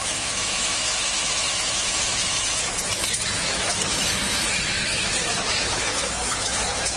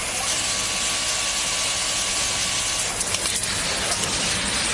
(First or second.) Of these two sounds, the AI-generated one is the first